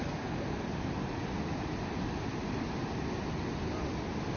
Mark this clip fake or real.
real